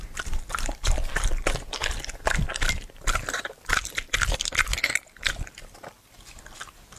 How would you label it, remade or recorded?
remade